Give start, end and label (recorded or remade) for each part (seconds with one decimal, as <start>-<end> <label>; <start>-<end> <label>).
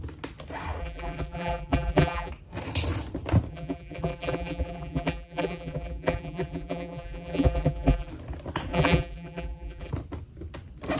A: 0.0-0.8 recorded; 0.8-2.3 remade; 2.3-3.5 recorded; 3.5-8.1 remade; 8.1-8.7 recorded; 8.7-9.9 remade; 9.9-11.0 recorded